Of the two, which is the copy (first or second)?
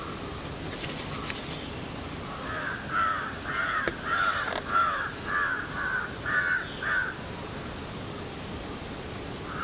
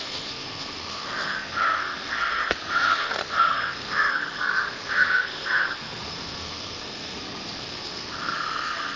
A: second